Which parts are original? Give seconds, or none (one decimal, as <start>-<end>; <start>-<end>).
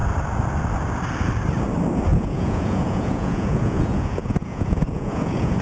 0.0-2.1